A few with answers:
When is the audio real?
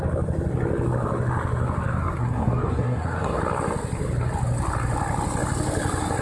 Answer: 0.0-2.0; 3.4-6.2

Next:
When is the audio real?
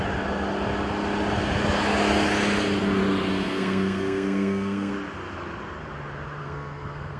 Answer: 0.0-3.3; 4.9-6.4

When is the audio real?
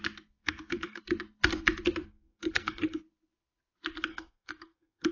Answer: 0.0-0.4; 1.0-2.0; 3.0-4.1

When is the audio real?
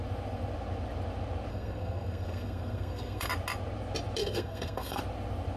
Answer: 0.0-1.5; 3.3-4.2; 5.0-5.6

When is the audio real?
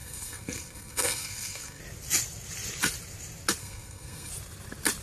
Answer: 1.8-3.6; 4.3-5.0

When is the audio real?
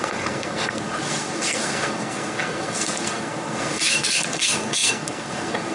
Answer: none